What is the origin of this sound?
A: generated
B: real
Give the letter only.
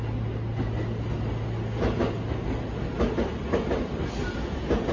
B